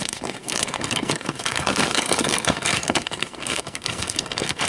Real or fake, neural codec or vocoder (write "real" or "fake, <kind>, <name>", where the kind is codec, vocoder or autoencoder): fake, codec, SNAC